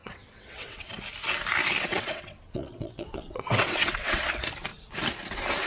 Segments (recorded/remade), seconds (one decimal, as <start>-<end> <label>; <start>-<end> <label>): 0.0-0.9 remade; 0.9-1.9 recorded; 1.9-4.2 remade; 4.2-5.7 recorded